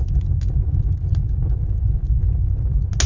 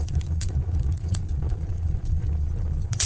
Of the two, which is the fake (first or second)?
second